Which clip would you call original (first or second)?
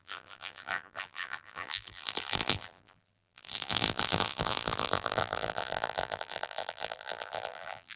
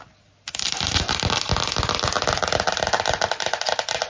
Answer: second